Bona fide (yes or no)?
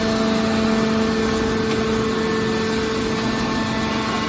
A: yes